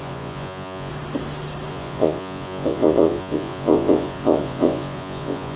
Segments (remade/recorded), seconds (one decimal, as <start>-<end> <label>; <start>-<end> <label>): 0.0-0.9 remade; 0.9-1.7 recorded; 1.7-5.6 remade